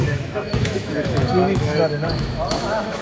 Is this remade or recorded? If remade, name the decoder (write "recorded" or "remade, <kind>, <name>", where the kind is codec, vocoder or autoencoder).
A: remade, autoencoder, DAC-VAE